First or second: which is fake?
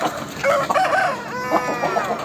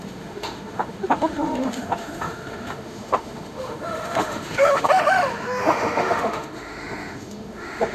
second